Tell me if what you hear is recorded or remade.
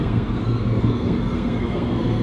remade